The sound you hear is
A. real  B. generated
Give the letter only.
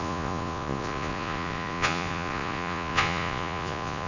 B